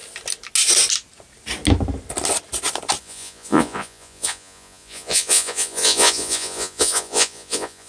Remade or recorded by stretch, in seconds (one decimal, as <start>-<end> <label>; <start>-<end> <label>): 0.0-3.0 recorded; 3.0-7.9 remade